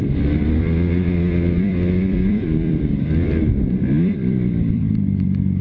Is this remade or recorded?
remade